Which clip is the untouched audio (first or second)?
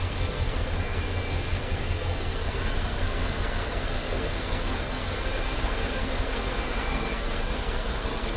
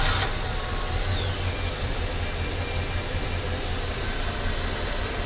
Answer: second